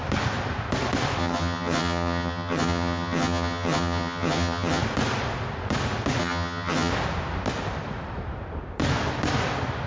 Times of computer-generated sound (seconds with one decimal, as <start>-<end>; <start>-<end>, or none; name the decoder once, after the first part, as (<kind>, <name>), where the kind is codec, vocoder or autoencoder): 1.2-4.8 (vocoder, HiFi-GAN); 6.2-6.9